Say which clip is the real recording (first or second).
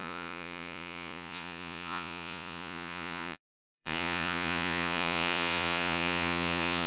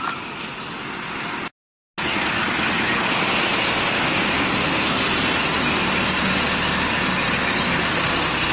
second